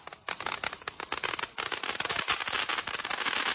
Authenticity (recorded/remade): recorded